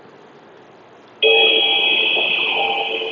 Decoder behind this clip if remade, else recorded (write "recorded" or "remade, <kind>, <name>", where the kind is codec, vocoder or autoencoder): recorded